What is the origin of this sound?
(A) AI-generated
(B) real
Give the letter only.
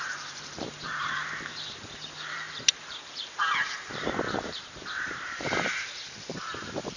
A